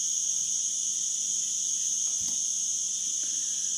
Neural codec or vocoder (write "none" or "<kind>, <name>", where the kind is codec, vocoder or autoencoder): none